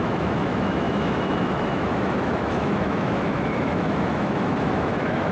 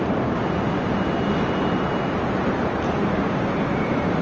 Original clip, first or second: second